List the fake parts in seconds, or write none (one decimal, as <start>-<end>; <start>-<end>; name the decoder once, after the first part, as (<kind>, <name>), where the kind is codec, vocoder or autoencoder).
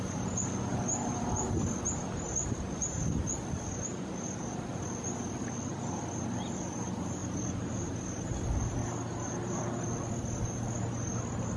none